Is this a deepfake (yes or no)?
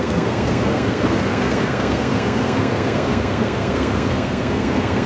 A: yes